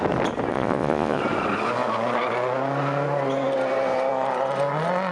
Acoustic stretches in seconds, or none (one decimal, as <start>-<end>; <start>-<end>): 0.0-0.5; 1.2-5.1